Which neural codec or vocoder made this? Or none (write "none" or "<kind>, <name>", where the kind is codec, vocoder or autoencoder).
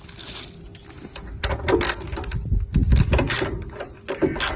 none